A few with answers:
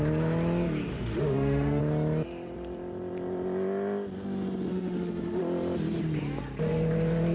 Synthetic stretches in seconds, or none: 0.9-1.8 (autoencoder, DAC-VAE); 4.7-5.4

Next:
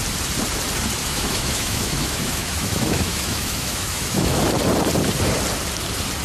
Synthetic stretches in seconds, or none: 1.0-4.4 (autoencoder, DAC-VAE)

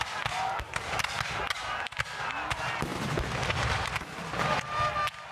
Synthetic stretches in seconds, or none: none

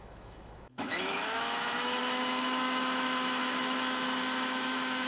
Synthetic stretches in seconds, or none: 0.0-5.1 (autoencoder, DAC-VAE)